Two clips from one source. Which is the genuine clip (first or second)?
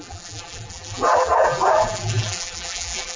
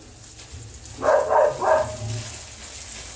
second